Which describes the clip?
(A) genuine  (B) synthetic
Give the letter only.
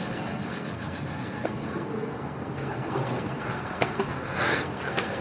B